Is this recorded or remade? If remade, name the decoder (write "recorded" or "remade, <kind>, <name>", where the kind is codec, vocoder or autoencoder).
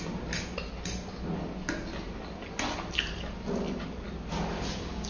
recorded